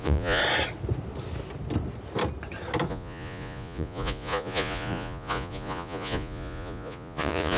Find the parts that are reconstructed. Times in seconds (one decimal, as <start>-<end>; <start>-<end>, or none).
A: 0.0-0.4; 2.9-7.6